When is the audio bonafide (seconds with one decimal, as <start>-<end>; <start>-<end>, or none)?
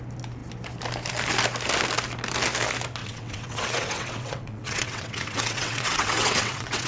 0.0-3.0